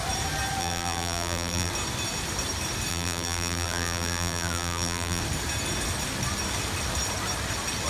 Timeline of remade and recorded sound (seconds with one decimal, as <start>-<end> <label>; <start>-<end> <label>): 0.0-0.6 recorded; 0.6-1.7 remade; 1.7-2.9 recorded; 2.9-5.2 remade; 5.2-7.9 recorded